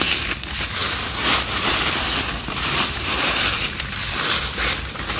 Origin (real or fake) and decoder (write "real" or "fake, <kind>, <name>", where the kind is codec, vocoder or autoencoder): fake, vocoder, BigVGAN v2